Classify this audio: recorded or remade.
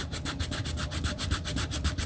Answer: remade